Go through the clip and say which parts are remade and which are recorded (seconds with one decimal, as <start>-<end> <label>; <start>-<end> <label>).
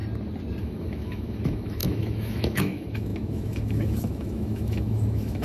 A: 0.0-0.6 recorded; 0.6-5.4 remade